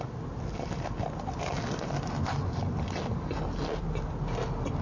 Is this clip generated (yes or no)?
no